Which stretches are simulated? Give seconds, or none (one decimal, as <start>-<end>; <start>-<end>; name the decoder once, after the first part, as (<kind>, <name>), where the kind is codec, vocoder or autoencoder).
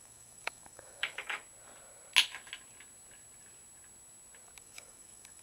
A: 0.0-1.4 (autoencoder, DAC-VAE); 4.6-5.4